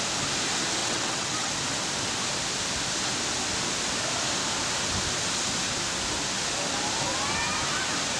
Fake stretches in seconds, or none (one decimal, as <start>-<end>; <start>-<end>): 0.8-1.5